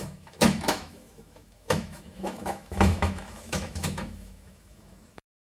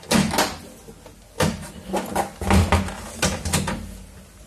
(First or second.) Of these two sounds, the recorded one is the second